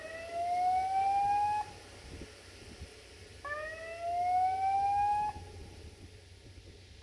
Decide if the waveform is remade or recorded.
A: recorded